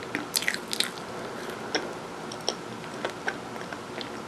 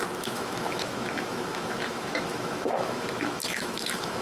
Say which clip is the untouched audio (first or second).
first